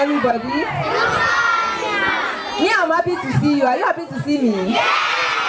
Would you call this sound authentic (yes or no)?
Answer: yes